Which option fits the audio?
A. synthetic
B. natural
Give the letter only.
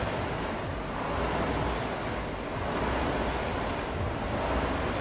B